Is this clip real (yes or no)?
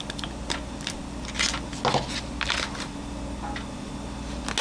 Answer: yes